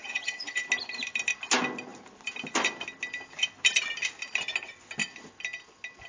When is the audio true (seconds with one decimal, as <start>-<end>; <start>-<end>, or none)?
0.6-6.1